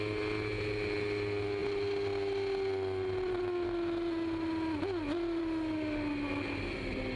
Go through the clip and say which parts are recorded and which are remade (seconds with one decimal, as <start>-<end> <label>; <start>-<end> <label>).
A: 0.0-7.2 recorded